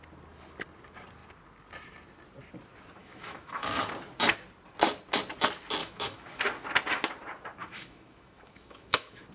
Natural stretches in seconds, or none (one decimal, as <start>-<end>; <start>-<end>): 0.0-3.0; 3.9-5.8; 6.4-7.6